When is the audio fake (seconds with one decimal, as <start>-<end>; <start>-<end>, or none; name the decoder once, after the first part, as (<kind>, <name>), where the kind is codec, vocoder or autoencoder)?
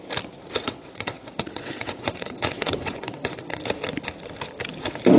0.5-3.6 (vocoder, WaveNeXt)